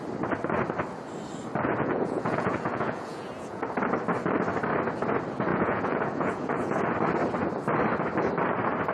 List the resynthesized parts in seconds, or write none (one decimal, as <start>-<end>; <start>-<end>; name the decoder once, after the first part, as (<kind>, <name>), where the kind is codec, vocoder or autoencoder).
1.8-3.6 (vocoder, Vocos); 5.5-6.8